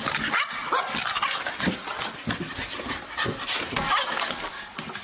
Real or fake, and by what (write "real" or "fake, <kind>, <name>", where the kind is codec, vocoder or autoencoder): real